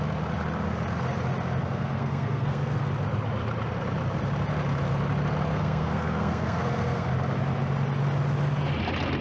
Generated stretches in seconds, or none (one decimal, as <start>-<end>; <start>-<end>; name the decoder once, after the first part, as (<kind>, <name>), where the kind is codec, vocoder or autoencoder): 1.6-2.9 (codec, SNAC); 5.5-7.1